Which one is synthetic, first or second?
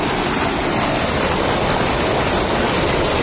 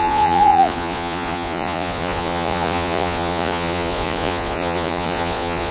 second